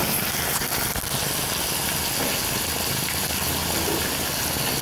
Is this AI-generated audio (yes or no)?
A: no